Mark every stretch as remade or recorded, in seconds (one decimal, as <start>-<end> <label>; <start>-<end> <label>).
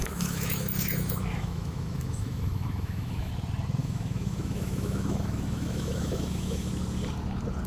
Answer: 0.0-3.3 remade; 3.3-3.8 recorded; 3.8-6.7 remade; 6.7-7.7 recorded